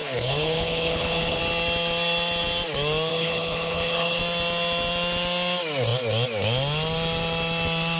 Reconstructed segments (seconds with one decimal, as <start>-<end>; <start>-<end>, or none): 0.0-1.4; 3.1-4.2